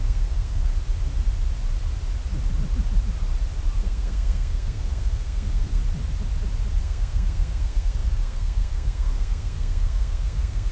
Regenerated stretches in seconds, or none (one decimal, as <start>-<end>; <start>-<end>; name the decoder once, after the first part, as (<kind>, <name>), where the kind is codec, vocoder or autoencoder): 0.0-0.7 (codec, SNAC); 3.8-5.8; 6.8-10.7